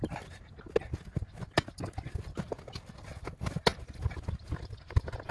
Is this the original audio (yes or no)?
yes